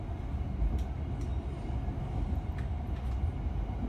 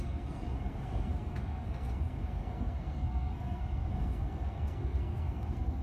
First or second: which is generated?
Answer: second